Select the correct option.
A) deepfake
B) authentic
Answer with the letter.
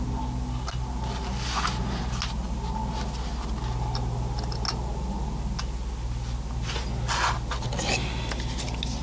B